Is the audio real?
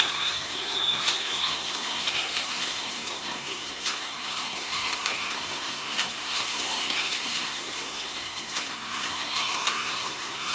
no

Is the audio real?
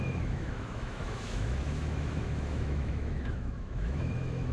no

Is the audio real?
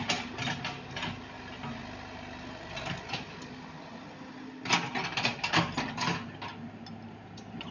yes